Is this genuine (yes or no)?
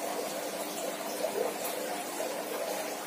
no